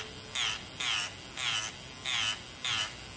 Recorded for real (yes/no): yes